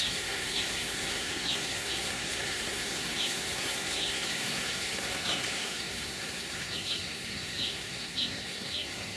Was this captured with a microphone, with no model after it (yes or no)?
no